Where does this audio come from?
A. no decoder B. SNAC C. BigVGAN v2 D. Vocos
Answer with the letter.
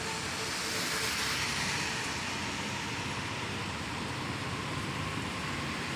A